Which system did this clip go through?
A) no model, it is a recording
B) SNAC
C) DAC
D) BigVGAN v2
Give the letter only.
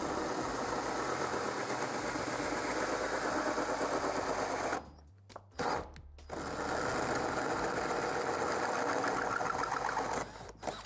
A